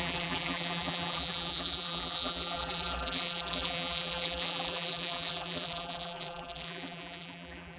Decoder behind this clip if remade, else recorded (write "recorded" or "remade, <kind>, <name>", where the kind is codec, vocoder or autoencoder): remade, vocoder, BigVGAN v2